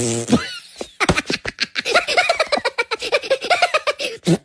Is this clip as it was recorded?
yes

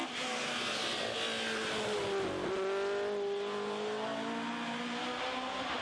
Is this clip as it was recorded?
yes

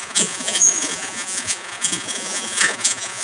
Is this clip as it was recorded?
no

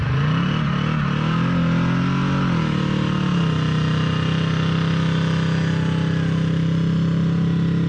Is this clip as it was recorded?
yes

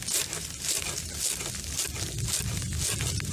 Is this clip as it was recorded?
yes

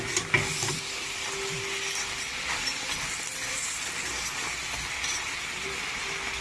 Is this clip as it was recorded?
yes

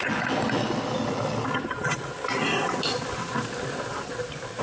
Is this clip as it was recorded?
yes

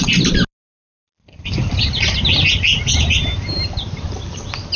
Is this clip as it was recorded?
yes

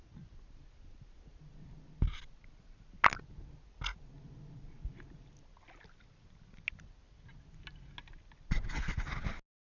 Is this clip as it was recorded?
yes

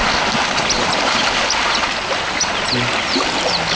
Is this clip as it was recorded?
yes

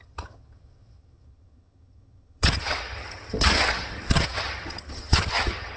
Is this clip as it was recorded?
no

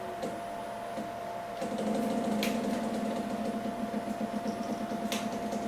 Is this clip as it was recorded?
yes